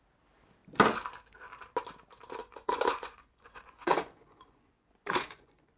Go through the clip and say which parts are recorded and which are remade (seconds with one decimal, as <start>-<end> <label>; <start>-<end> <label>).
0.0-2.4 recorded; 2.4-5.8 remade